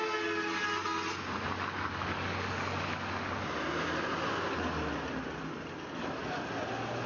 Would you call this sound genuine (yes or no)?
yes